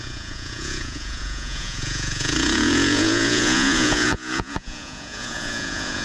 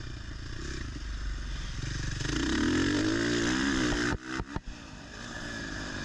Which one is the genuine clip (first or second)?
second